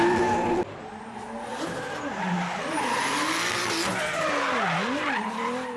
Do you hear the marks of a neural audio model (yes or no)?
no